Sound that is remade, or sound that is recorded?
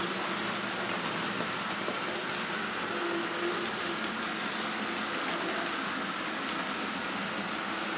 recorded